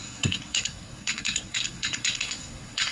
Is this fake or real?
fake